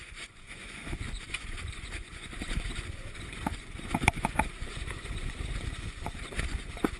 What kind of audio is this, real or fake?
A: fake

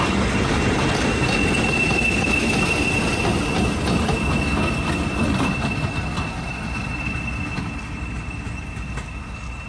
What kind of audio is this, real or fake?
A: real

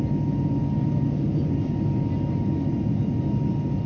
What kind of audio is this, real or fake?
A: real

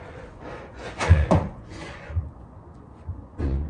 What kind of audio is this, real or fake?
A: fake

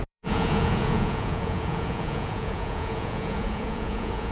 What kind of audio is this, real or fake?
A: fake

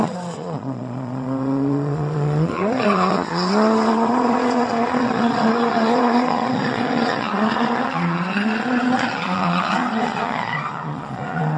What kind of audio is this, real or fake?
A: fake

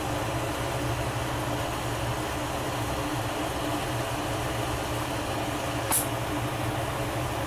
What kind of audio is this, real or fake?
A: real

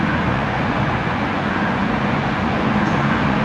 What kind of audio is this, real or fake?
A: fake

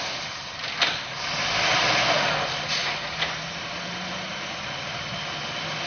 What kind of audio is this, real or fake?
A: real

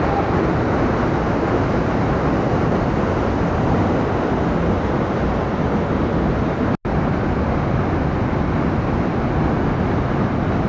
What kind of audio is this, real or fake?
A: real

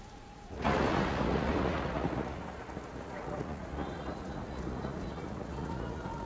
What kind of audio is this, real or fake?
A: fake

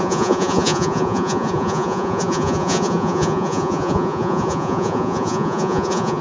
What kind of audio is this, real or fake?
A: fake